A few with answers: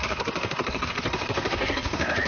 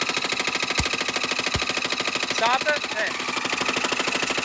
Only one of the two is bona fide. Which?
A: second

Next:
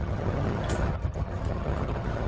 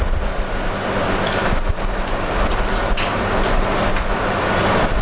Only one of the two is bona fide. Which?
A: second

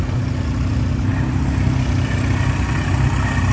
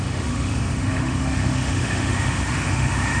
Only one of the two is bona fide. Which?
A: first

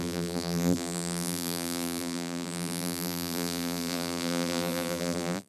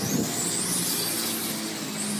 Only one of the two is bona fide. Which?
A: second